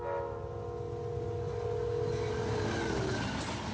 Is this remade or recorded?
recorded